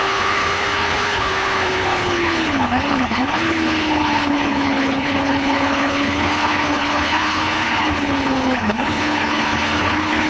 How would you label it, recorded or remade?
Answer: remade